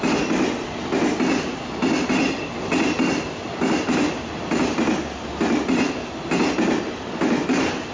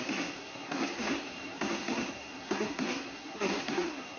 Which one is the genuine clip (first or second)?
first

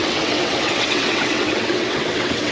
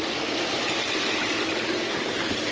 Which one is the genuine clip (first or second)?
second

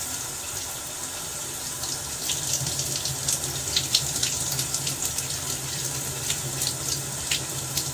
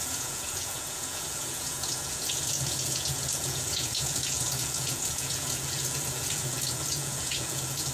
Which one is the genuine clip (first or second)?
first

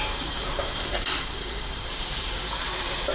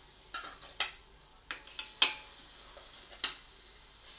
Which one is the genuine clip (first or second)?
second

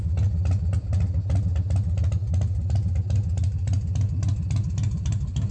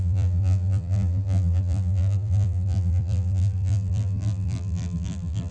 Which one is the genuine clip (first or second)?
first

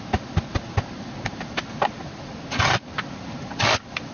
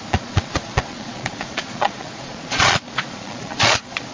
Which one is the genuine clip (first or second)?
first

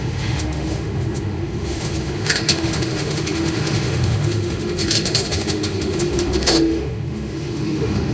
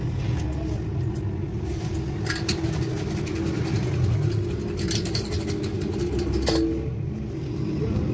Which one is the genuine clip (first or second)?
second